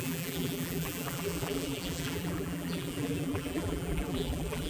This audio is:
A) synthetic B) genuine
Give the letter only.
A